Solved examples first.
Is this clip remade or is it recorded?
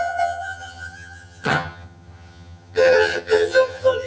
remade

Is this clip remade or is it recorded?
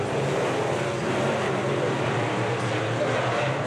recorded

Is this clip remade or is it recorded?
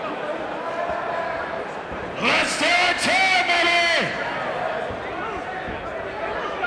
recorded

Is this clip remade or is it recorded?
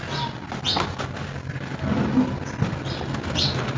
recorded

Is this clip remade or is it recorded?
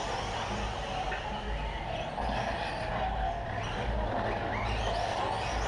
recorded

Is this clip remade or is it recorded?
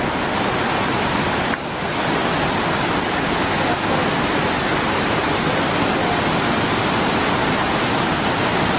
recorded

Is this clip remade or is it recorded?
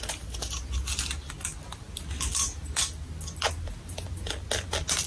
recorded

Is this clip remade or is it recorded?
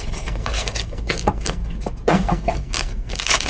remade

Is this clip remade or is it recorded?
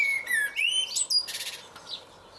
recorded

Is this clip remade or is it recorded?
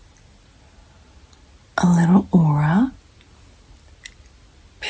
recorded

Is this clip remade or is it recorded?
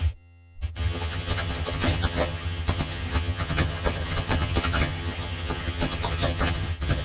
remade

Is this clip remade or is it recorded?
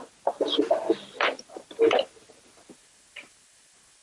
recorded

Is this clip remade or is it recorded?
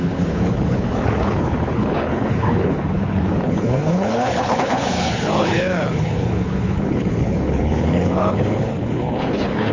remade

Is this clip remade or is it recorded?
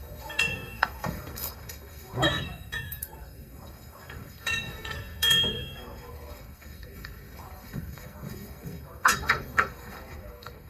remade